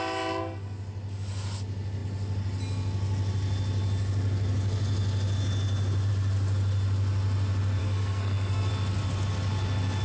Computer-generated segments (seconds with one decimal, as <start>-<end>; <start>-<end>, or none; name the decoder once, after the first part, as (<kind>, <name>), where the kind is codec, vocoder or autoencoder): 7.8-8.7 (codec, SNAC)